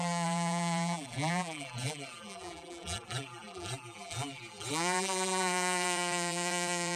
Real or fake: fake